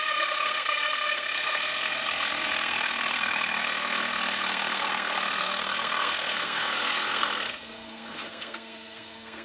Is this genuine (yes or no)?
no